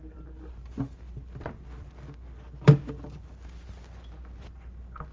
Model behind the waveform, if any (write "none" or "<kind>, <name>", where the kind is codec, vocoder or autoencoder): none